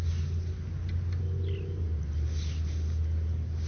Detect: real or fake real